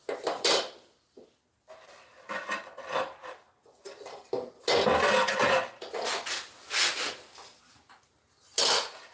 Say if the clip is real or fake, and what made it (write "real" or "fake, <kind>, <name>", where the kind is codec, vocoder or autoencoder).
real